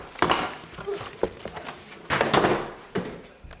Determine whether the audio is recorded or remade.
recorded